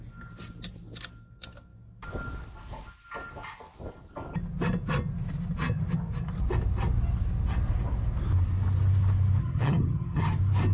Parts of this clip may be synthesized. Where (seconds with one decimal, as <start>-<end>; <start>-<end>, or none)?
9.4-10.2